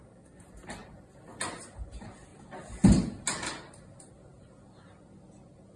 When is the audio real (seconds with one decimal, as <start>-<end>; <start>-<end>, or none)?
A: 0.0-5.8